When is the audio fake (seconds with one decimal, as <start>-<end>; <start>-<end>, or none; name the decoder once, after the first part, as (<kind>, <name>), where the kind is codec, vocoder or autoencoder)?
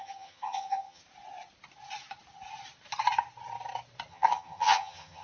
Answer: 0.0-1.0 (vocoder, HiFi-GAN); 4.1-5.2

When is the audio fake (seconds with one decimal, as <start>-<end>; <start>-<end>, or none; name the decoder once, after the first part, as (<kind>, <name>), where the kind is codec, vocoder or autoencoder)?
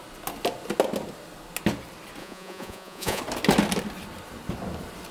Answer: 2.2-3.2 (vocoder, Vocos)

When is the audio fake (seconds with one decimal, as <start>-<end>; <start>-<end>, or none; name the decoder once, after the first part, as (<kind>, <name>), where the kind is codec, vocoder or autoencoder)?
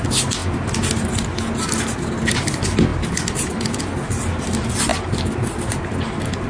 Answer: none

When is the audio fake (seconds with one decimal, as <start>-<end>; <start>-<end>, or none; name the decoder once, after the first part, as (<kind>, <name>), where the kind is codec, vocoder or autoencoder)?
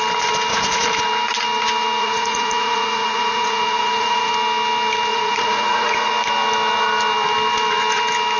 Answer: 0.5-1.0 (vocoder, Vocos); 2.0-4.3; 5.1-6.1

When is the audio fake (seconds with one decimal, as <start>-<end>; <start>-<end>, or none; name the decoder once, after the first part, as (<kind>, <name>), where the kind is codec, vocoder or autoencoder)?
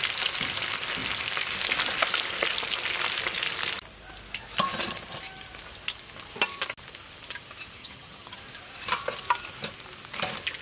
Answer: 7.8-8.4 (vocoder, HiFi-GAN)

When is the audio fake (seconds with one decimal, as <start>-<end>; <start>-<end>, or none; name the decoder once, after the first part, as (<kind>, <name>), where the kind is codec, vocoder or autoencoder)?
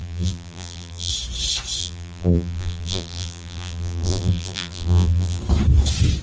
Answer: 0.0-1.1 (vocoder, BigVGAN v2); 1.8-5.4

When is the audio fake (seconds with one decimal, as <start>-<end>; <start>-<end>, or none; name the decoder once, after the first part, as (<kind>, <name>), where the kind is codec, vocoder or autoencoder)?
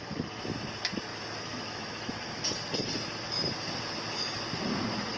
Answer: 1.1-2.1 (autoencoder, DAC-VAE)